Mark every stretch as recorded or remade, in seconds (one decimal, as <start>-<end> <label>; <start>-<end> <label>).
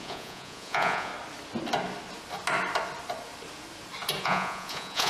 0.0-1.1 remade; 1.1-4.2 recorded; 4.2-5.1 remade